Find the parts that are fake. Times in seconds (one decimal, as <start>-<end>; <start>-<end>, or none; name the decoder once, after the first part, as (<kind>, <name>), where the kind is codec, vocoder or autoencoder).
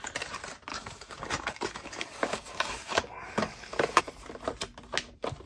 0.7-4.0 (codec, DAC)